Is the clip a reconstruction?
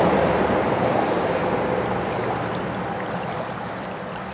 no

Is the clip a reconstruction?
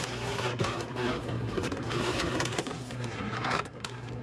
yes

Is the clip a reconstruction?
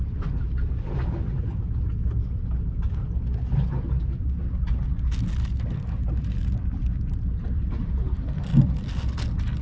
no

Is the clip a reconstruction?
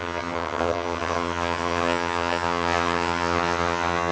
yes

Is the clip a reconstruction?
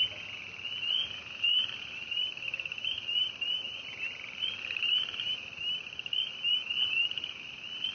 no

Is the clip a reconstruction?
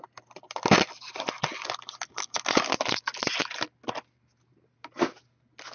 no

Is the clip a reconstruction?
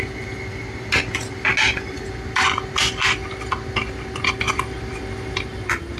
no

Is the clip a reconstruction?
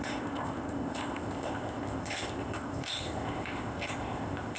yes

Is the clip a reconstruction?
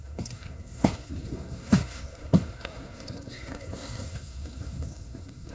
yes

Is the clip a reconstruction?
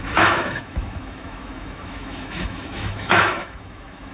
yes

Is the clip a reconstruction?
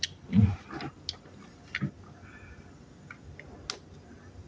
no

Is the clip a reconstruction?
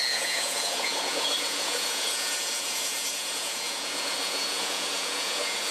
yes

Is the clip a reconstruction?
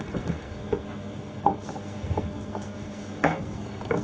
yes